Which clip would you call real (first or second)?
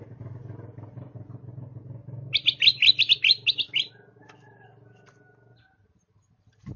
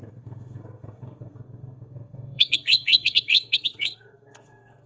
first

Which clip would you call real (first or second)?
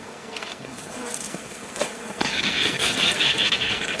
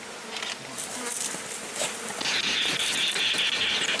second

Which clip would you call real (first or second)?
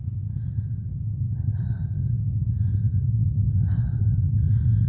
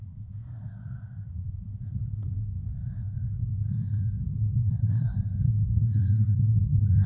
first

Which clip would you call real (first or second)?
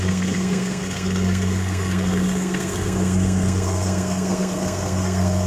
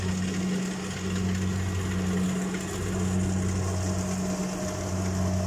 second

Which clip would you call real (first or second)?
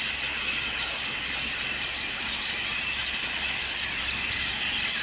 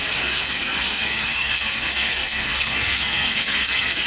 first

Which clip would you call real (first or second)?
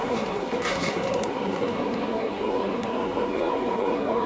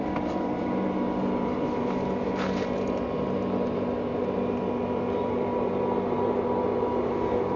second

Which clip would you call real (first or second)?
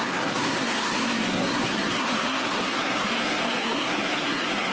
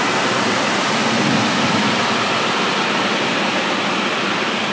second